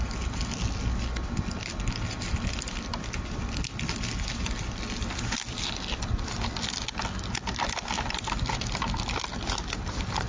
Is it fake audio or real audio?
real